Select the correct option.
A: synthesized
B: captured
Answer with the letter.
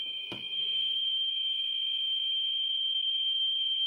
A